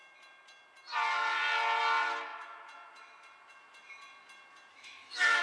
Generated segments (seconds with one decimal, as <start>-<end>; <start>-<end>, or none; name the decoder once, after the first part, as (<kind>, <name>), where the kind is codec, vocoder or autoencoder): 4.7-5.4 (autoencoder, DAC-VAE)